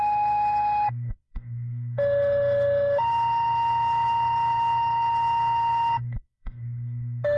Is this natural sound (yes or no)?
no